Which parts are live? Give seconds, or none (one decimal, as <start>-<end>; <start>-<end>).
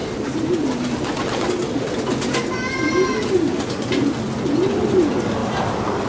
0.0-5.4